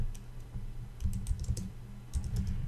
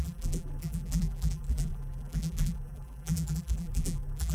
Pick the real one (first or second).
first